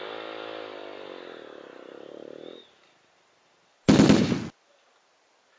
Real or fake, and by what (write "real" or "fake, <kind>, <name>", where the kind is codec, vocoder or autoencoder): real